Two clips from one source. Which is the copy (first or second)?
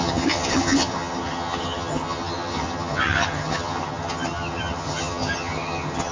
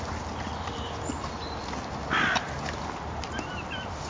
first